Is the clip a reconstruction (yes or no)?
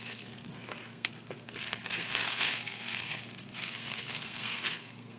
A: yes